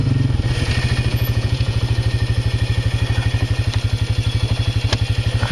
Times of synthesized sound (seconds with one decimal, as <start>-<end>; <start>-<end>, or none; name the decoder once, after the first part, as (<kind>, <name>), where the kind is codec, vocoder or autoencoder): 1.1-1.8 (vocoder, Vocos)